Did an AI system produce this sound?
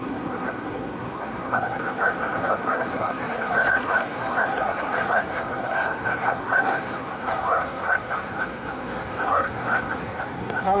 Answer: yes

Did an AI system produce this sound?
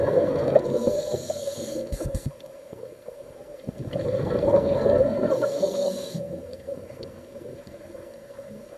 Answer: yes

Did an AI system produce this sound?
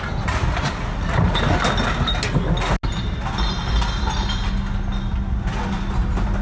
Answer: no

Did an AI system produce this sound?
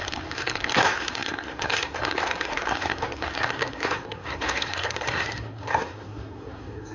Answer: yes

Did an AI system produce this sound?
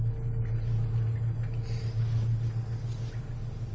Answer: no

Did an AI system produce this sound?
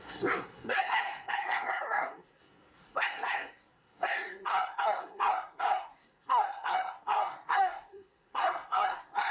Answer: yes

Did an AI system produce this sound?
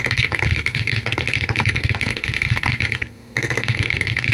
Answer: yes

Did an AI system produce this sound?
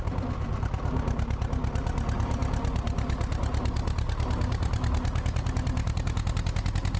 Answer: no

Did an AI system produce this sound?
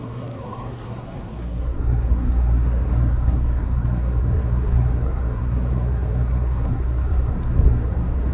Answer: yes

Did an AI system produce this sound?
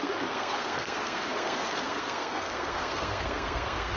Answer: yes